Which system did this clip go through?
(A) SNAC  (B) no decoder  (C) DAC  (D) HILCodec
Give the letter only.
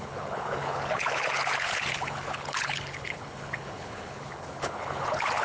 D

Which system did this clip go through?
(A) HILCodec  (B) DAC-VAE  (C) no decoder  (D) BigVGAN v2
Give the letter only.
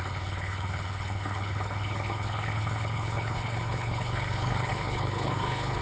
A